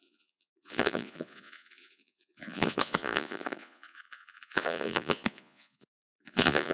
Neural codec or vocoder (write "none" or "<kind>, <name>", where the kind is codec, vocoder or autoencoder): vocoder, Vocos